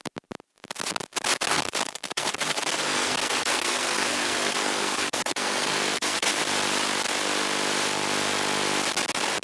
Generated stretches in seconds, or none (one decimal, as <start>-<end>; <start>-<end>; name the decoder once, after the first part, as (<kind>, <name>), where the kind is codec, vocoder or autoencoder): 1.5-6.4 (codec, SNAC)